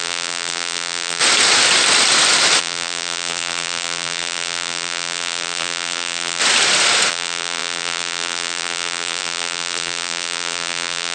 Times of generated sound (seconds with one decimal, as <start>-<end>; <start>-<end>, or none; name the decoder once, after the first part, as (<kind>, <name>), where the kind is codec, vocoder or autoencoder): 0.0-1.2 (vocoder, BigVGAN v2); 2.6-6.4; 7.1-11.1